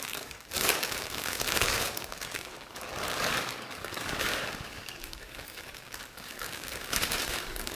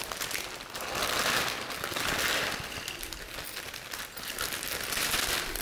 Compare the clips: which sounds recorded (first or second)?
second